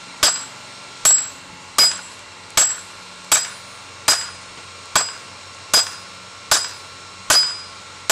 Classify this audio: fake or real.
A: real